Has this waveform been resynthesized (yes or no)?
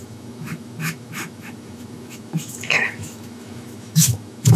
yes